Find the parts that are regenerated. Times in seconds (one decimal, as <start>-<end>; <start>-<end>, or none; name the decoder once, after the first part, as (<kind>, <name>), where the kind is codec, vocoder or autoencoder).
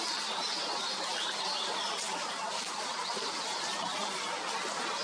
none